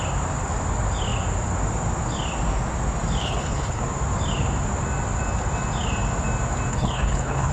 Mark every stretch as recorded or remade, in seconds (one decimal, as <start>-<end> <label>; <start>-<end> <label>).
0.0-3.2 recorded; 3.2-3.8 remade; 3.8-6.7 recorded; 6.7-7.5 remade